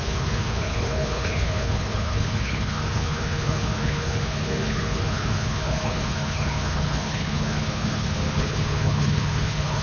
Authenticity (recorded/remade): remade